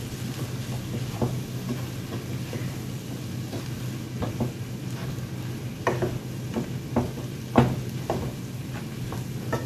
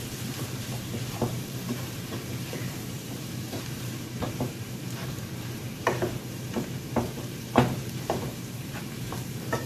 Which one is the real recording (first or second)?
first